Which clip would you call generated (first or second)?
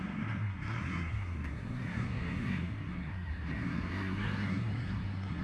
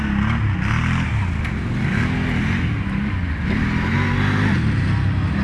first